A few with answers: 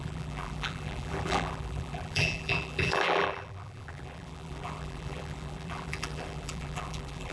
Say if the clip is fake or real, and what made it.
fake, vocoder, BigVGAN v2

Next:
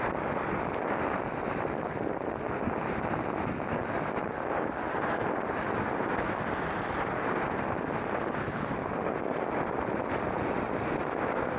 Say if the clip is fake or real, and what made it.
real